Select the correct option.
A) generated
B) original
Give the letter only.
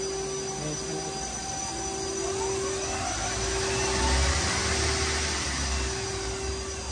B